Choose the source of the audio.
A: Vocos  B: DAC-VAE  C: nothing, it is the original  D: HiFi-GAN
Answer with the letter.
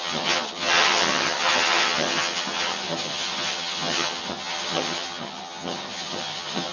D